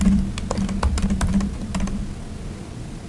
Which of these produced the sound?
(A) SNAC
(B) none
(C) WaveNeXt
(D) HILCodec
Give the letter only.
B